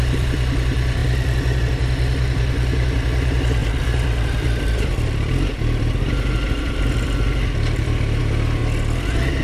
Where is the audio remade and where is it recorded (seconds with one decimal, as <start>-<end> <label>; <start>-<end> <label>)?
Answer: 0.0-8.6 remade; 8.6-9.4 recorded